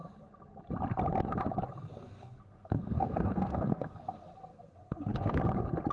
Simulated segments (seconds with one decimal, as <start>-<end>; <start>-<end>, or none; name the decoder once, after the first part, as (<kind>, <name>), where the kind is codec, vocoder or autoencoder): 1.9-5.4 (codec, SNAC)